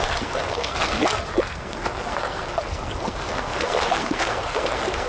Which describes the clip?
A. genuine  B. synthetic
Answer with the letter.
B